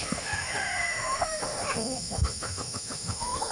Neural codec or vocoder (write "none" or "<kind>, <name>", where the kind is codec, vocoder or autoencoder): autoencoder, DAC-VAE